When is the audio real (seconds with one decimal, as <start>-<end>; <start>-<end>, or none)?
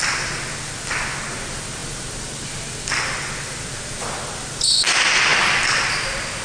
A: 0.0-6.4